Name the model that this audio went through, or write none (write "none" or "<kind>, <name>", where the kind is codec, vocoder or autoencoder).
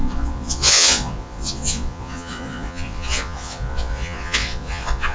vocoder, Vocos